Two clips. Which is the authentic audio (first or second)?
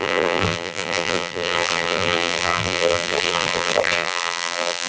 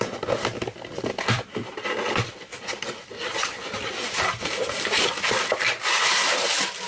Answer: second